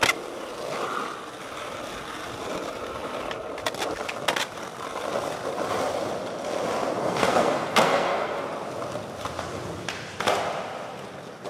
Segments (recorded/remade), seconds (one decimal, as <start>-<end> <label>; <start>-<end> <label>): 0.0-7.0 recorded; 7.0-8.4 remade; 8.4-11.5 recorded

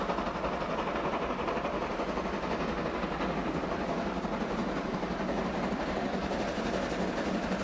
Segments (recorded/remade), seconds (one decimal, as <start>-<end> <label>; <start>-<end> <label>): 0.0-7.6 recorded

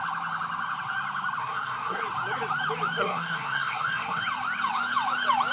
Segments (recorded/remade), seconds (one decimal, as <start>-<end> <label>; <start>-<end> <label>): 0.0-1.4 recorded; 1.4-2.0 remade; 2.0-3.0 recorded; 3.0-4.2 remade; 4.2-5.5 recorded

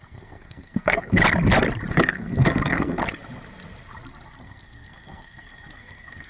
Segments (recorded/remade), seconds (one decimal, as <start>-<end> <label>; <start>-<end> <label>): 0.0-1.2 remade; 1.2-1.9 recorded; 1.9-3.0 remade; 3.0-4.4 recorded; 4.4-6.3 remade

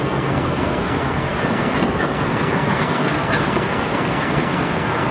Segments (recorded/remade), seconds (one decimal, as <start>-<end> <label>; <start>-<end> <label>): 0.0-5.1 remade

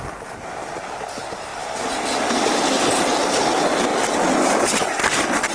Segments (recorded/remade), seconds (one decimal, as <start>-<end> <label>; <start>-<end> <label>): 0.0-5.5 recorded

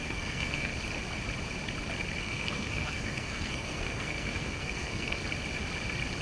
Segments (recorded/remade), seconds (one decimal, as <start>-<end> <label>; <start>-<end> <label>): 0.0-0.7 remade; 0.7-2.2 recorded; 2.2-5.2 remade; 5.2-6.2 recorded

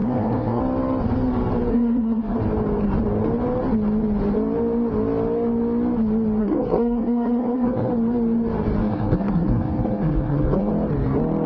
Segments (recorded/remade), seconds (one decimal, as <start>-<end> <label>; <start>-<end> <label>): 0.0-0.6 remade; 0.6-1.7 recorded; 1.7-2.4 remade; 2.4-6.4 recorded; 6.4-7.9 remade; 7.9-8.8 recorded; 8.8-10.7 remade; 10.7-11.5 recorded